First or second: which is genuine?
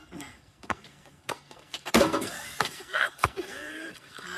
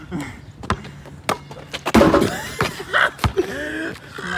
second